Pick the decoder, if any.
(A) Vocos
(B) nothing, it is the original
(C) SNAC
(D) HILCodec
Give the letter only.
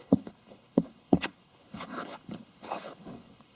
D